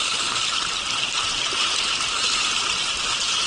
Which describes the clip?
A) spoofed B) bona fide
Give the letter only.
B